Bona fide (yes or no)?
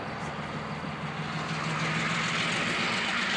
yes